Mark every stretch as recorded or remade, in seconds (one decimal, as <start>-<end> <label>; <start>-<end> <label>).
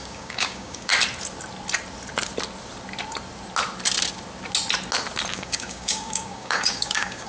0.0-0.9 remade; 0.9-5.3 recorded; 5.3-7.3 remade